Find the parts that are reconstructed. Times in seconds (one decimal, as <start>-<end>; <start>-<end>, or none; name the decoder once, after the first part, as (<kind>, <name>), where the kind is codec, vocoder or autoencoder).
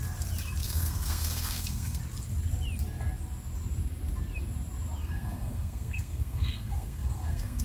0.6-2.0 (codec, SNAC); 5.0-7.6